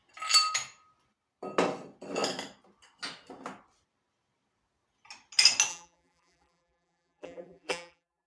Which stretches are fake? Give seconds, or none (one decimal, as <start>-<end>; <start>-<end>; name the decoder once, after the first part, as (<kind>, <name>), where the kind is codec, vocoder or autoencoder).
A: 5.7-8.3 (vocoder, BigVGAN v2)